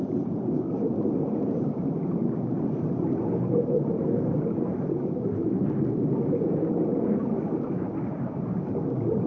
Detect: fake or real real